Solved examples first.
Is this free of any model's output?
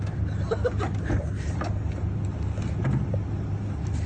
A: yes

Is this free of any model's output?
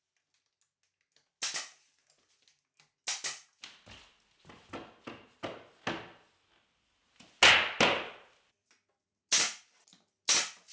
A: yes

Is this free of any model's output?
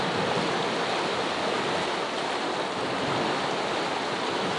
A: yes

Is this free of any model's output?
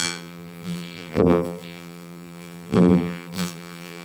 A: no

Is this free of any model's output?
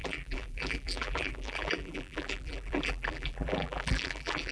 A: no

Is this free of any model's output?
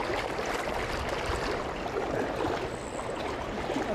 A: yes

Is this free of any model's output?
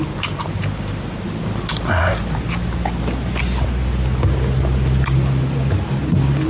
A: yes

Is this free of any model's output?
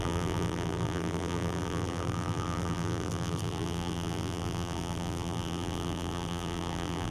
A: no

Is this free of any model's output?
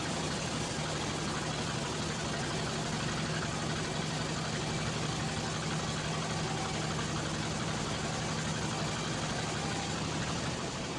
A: yes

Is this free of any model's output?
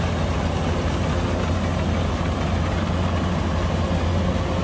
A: yes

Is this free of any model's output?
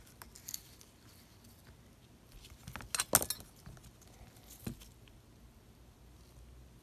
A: yes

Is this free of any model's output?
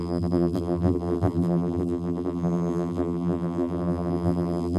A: no